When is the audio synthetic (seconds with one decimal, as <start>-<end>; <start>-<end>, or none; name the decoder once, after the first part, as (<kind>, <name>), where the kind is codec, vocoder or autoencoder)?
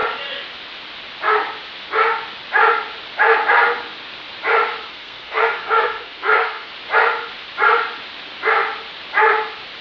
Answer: 4.9-6.7 (codec, SNAC)